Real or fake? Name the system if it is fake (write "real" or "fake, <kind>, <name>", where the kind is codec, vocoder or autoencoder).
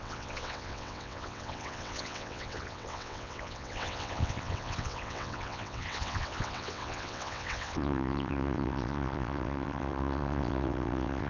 fake, vocoder, WaveNeXt